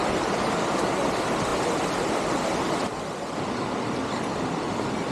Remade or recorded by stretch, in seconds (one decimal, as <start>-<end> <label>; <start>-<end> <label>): 0.0-5.1 recorded